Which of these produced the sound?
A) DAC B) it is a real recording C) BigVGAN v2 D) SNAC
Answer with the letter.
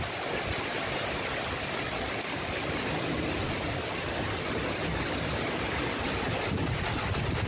B